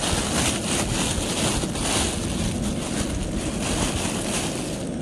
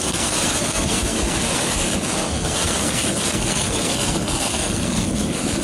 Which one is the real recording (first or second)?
first